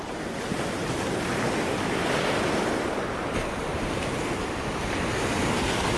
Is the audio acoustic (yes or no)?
yes